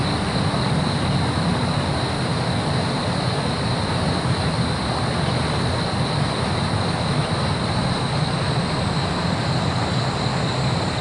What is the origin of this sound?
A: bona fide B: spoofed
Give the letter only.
A